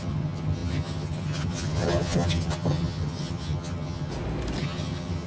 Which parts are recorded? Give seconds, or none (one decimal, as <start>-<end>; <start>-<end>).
4.1-4.6